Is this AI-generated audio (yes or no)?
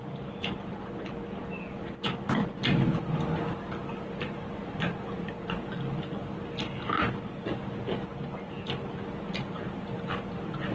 no